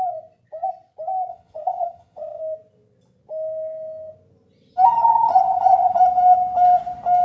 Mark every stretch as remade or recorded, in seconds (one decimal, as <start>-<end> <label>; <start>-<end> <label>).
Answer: 0.0-1.3 recorded; 1.3-2.4 remade; 2.4-4.9 recorded; 4.9-6.0 remade; 6.0-7.2 recorded